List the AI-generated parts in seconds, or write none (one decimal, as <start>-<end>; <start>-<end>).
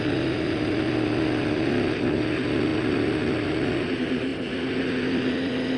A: 2.7-3.7; 4.3-5.3